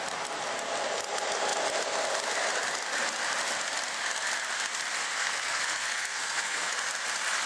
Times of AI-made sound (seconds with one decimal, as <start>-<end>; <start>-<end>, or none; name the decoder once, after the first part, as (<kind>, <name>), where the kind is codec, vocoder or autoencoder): 5.0-6.7 (codec, SNAC)